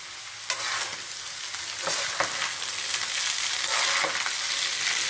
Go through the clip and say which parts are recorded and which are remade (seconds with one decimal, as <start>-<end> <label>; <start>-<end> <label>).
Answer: 0.0-5.1 recorded